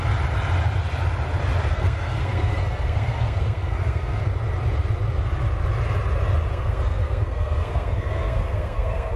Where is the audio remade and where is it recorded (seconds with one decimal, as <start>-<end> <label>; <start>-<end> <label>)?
0.0-1.7 recorded; 1.7-4.2 remade; 4.2-6.5 recorded; 6.5-9.2 remade